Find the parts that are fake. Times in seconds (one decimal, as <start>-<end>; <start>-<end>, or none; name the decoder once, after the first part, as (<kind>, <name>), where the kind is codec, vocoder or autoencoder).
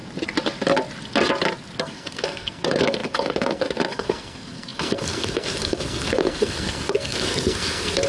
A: 1.8-8.1 (codec, SNAC)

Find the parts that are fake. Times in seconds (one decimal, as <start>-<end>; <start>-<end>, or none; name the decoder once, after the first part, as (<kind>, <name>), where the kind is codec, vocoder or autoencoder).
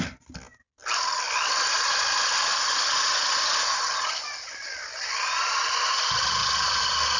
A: none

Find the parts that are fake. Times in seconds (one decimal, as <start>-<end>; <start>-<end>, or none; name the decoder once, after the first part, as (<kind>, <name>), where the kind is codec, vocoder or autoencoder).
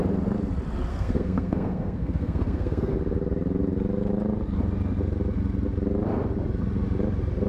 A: 0.9-2.9 (codec, SNAC)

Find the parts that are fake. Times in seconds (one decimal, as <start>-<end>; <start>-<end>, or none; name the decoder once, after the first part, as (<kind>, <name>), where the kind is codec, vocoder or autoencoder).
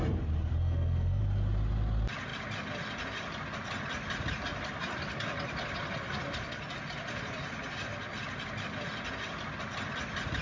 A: 0.6-1.2 (codec, SNAC)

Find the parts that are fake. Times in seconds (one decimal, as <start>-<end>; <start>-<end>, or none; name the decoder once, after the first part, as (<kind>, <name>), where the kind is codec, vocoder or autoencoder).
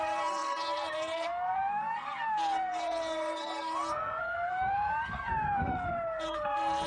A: 0.0-6.9 (codec, SNAC)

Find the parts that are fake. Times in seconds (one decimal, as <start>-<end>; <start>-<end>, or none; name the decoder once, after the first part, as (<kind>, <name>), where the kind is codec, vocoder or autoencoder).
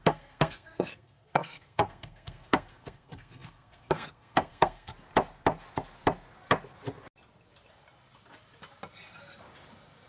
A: 0.0-4.9 (codec, SNAC)